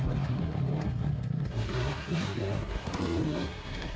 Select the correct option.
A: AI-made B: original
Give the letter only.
A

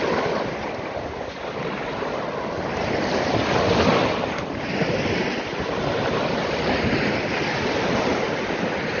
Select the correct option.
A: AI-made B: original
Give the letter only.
B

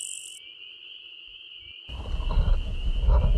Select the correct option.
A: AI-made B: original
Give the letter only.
B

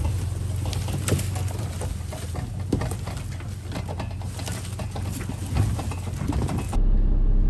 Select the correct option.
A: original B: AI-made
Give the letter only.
A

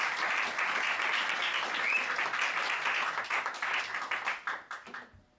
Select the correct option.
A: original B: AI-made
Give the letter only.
A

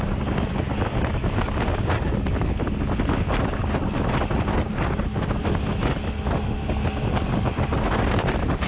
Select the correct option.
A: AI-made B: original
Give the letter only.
B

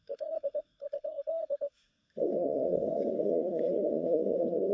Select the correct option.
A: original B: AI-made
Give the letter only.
B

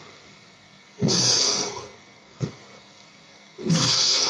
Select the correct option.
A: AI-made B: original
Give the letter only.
A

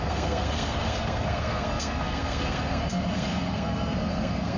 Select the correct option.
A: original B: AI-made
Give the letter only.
B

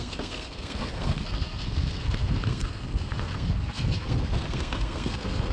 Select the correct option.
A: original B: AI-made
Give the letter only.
B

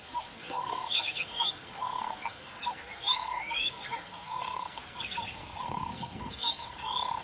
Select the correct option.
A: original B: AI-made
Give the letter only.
B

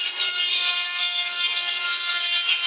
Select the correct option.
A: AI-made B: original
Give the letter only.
A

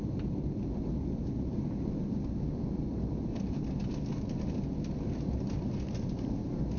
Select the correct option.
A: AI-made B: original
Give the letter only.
B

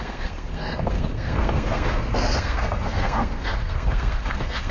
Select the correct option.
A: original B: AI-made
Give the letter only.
B